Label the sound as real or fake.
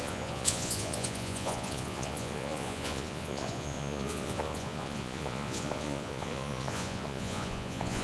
fake